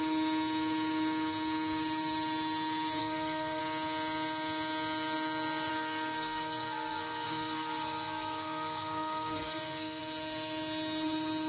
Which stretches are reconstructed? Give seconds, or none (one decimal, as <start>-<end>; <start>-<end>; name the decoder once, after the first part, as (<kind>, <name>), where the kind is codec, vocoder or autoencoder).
3.0-3.6 (codec, SNAC); 5.7-10.0